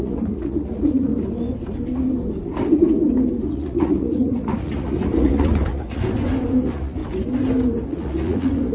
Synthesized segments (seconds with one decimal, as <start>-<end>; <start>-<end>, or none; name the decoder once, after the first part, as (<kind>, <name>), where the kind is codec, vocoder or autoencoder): 0.0-1.1 (vocoder, Vocos); 3.5-6.0; 6.6-7.0; 7.9-8.7